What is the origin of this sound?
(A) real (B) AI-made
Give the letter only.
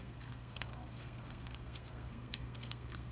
B